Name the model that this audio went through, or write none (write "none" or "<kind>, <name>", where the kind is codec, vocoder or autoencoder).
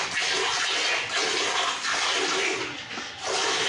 none